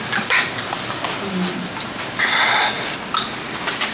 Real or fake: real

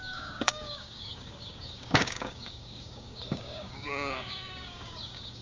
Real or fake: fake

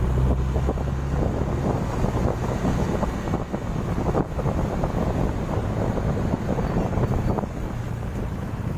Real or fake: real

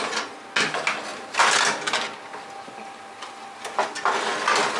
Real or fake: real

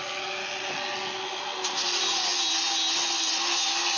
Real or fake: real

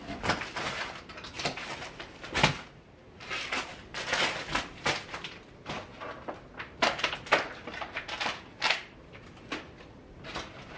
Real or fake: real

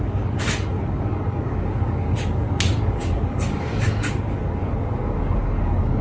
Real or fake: fake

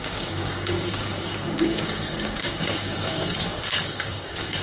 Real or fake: fake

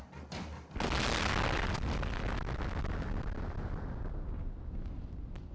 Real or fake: real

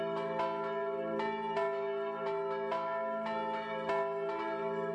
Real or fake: real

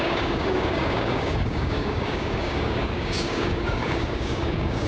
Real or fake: fake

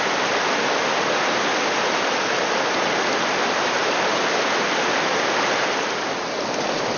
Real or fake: real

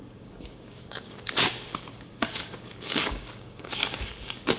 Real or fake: fake